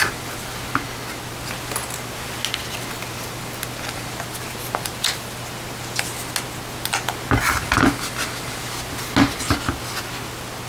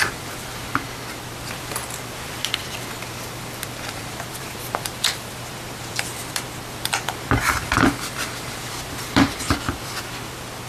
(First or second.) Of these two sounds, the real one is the first